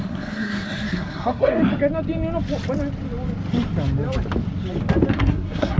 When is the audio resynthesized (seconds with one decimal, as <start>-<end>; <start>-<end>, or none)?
0.0-1.6; 5.1-5.8